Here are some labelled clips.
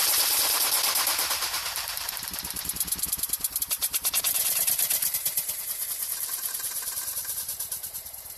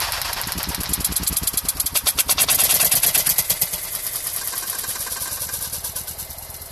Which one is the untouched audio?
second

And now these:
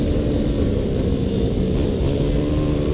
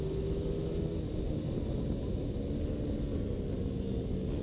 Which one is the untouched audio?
second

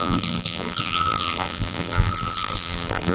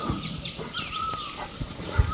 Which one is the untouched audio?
second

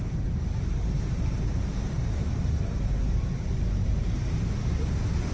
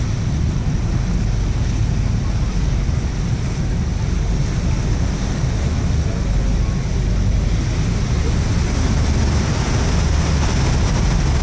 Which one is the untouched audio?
second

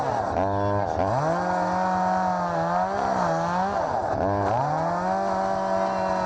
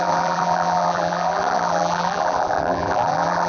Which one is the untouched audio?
first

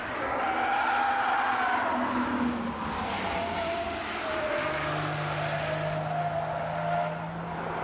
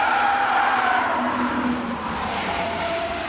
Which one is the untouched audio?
first